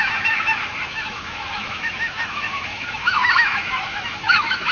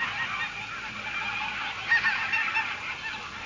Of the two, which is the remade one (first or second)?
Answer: first